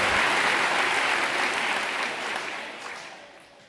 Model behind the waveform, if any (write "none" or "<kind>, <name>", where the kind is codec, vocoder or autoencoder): none